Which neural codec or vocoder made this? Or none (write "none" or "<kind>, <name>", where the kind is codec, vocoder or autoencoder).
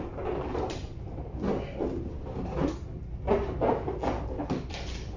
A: none